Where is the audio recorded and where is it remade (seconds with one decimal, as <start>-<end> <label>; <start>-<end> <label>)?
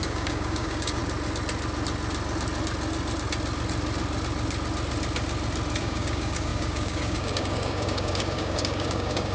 0.0-1.0 remade; 1.0-5.8 recorded; 5.8-9.3 remade